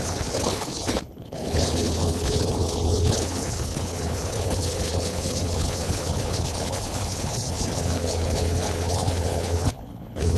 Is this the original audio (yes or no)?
no